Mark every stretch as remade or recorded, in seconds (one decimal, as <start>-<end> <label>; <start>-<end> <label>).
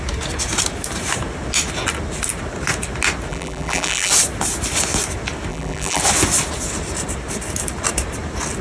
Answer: 0.0-3.3 recorded; 3.3-4.1 remade; 4.1-5.5 recorded; 5.5-6.0 remade; 6.0-8.6 recorded